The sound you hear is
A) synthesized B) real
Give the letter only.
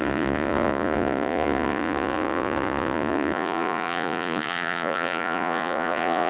A